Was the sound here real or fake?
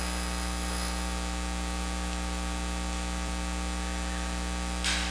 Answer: real